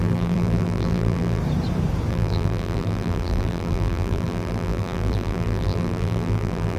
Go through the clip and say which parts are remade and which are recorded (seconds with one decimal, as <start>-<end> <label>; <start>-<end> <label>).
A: 0.0-1.4 remade; 1.4-2.1 recorded; 2.1-6.8 remade